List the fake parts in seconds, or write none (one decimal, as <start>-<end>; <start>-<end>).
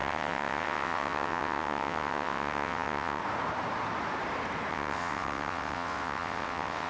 0.0-3.2; 4.7-6.9